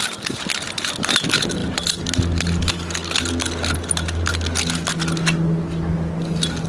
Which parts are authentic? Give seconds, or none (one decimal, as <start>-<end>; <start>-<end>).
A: 0.0-6.7

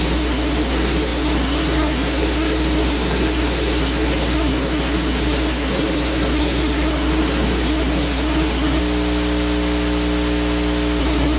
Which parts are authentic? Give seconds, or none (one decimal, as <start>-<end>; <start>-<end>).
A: 8.8-11.0

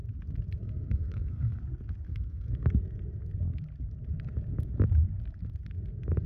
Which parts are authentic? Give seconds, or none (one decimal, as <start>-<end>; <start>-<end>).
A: 0.0-0.6; 1.6-2.1; 2.7-6.3

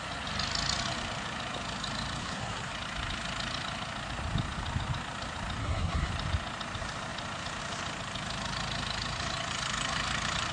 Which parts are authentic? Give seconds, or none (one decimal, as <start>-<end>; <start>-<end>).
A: 0.0-2.2; 2.7-5.6; 6.1-10.5

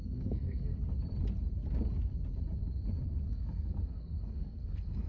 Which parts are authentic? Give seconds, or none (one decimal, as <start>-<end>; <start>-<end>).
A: 0.7-3.3

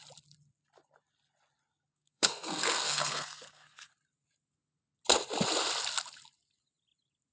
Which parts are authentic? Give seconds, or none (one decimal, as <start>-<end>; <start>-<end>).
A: 0.0-1.9; 3.9-7.3

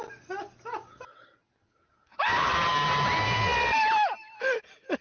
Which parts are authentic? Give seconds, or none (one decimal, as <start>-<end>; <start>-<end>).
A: 0.0-5.0

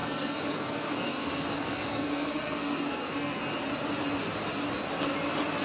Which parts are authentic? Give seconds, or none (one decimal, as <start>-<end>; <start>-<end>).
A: 3.4-5.6